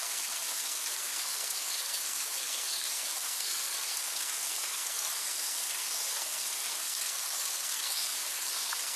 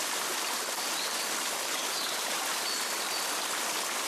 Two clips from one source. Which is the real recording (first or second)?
second